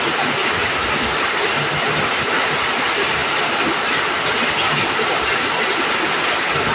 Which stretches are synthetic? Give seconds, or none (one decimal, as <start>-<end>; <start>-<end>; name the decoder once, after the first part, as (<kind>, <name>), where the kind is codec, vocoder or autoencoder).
0.0-0.4 (vocoder, BigVGAN v2); 2.2-3.2; 4.7-6.7